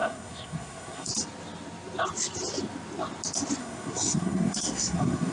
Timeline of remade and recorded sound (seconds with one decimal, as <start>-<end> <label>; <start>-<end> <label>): 0.0-1.1 remade; 1.1-3.6 recorded; 3.6-5.3 remade